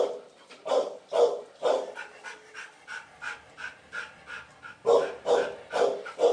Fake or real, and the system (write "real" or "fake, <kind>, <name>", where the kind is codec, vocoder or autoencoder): real